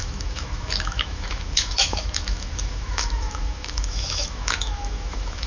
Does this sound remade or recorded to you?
remade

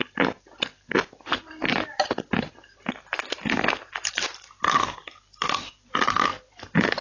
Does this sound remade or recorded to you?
recorded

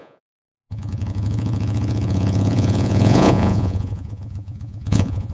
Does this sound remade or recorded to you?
remade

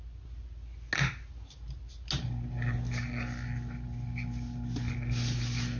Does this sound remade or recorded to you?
recorded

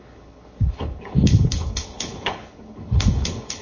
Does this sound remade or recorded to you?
remade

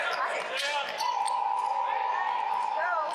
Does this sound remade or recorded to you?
recorded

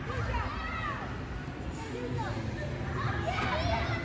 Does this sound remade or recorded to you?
recorded